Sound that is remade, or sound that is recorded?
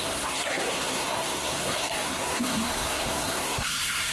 remade